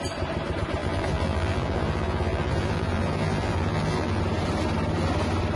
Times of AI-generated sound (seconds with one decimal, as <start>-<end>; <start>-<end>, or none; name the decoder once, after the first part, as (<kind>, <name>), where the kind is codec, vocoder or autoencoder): 0.8-4.2 (vocoder, BigVGAN v2)